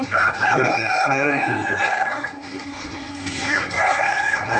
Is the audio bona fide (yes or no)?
no